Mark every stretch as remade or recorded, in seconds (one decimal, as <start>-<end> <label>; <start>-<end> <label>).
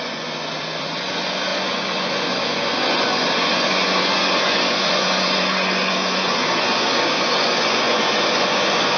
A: 0.0-9.0 remade